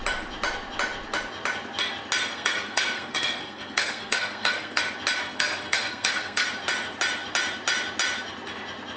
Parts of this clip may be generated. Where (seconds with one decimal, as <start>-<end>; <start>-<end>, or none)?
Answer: 2.3-4.8; 5.2-6.5